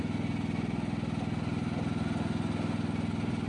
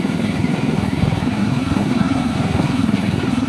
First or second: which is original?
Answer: first